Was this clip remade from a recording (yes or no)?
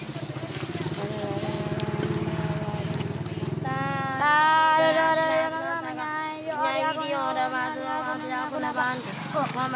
no